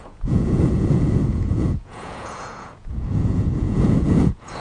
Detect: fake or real fake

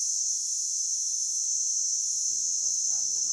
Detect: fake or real fake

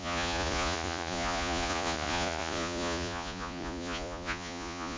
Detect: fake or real fake